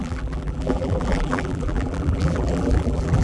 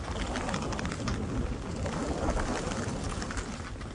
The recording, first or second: second